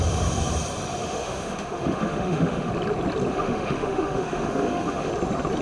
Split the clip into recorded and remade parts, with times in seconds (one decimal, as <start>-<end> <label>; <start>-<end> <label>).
0.0-1.0 recorded; 1.0-2.7 remade; 2.7-3.3 recorded; 3.3-5.1 remade; 5.1-5.6 recorded